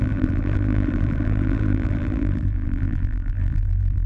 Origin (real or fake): fake